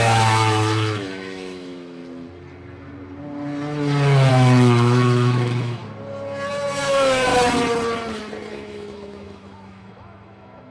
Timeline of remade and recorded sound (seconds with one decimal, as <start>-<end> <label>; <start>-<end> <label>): 0.0-2.0 remade; 2.0-4.3 recorded; 4.3-5.8 remade; 5.8-6.5 recorded; 6.5-7.3 remade; 7.3-8.5 recorded; 8.5-10.7 remade